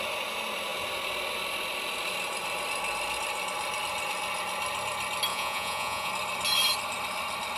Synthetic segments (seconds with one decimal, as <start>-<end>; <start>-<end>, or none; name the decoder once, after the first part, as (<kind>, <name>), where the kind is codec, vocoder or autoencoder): 5.3-6.1 (vocoder, Vocos)